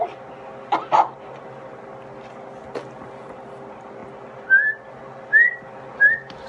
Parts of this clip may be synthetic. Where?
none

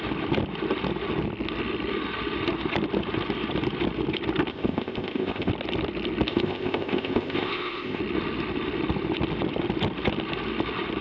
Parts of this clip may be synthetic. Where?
4.5-5.5 (codec, ZipCodec); 6.3-8.0

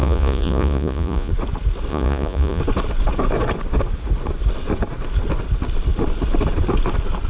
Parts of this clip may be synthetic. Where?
0.0-1.3 (vocoder, Vocos); 1.9-2.6